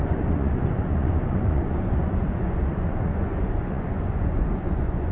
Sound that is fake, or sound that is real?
fake